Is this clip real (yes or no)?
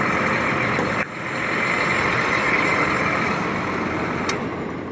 yes